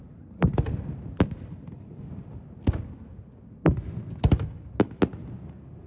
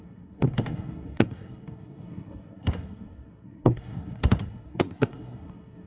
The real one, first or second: first